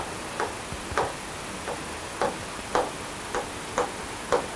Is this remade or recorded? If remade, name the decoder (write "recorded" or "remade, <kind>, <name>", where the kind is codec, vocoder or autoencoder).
recorded